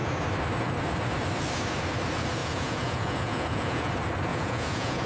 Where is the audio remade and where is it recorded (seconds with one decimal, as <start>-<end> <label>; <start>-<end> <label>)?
0.0-2.4 recorded; 2.4-3.9 remade; 3.9-4.3 recorded; 4.3-5.1 remade